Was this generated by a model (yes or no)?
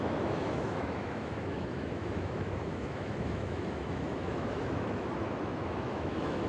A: yes